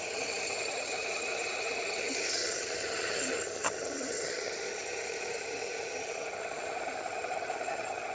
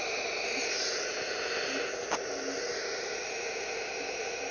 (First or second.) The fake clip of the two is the first